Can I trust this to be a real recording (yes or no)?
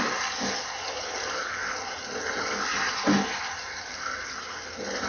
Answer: yes